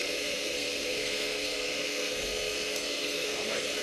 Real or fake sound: fake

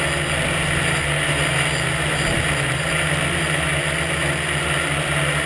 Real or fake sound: real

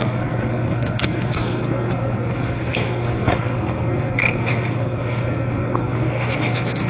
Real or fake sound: fake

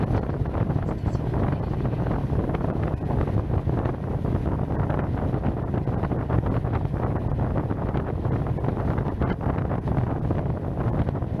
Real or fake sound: real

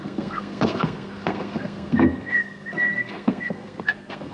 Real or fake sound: fake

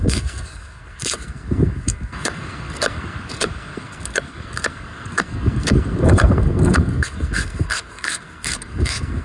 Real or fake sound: fake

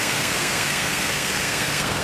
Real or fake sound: fake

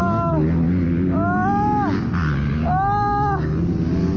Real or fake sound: real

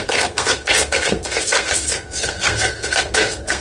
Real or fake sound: fake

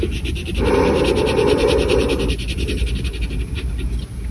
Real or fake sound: real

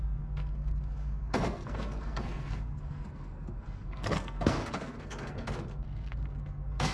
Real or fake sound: fake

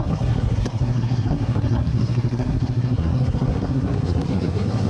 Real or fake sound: fake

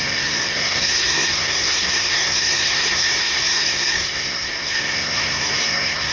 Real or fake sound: fake